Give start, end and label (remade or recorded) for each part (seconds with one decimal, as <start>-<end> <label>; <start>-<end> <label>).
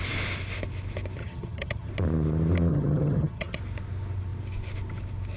0.0-1.2 recorded; 1.2-1.9 remade; 1.9-2.7 recorded; 2.7-3.6 remade; 3.6-5.4 recorded